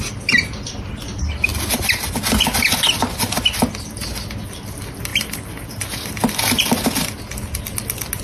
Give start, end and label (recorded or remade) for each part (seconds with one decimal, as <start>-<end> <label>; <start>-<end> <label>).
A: 0.0-8.2 recorded